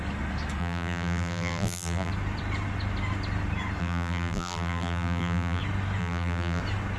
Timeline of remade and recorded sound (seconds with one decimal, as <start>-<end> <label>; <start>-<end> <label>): 0.0-0.6 recorded; 0.6-2.1 remade; 2.1-3.8 recorded; 3.8-5.6 remade; 5.6-6.0 recorded; 6.0-6.6 remade; 6.6-7.0 recorded